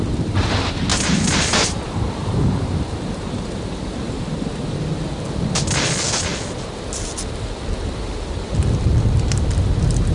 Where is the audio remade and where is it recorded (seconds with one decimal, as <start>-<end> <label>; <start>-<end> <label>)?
0.0-0.9 recorded; 0.9-4.2 remade; 4.2-10.1 recorded